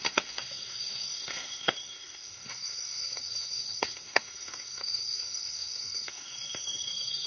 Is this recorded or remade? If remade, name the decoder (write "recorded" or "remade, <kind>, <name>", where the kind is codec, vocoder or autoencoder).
remade, codec, SNAC